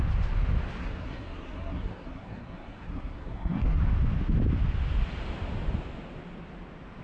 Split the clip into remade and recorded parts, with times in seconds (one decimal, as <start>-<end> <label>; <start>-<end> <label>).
0.0-0.8 recorded; 0.8-3.8 remade; 3.8-7.0 recorded